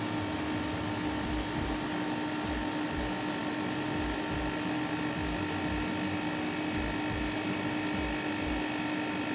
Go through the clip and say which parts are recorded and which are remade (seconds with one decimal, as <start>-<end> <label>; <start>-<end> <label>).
0.0-9.3 recorded